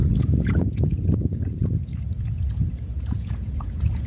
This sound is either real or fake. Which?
fake